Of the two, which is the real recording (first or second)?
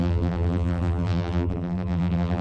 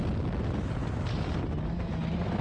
second